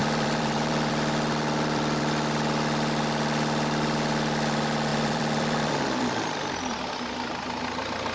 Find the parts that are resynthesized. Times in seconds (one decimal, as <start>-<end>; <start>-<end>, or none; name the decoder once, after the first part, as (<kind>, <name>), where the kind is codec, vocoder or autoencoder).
0.0-2.0 (vocoder, BigVGAN v2); 4.9-6.8